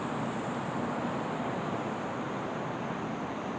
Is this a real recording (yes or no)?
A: yes